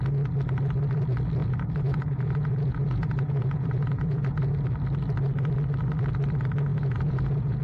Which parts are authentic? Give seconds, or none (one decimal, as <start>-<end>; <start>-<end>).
0.0-1.4; 4.4-6.7